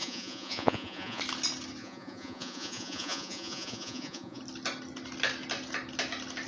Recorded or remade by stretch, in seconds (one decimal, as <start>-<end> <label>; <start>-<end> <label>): 0.0-1.2 remade; 1.2-1.8 recorded; 1.8-4.4 remade; 4.4-6.5 recorded